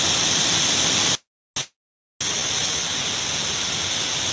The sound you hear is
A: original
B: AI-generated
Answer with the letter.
A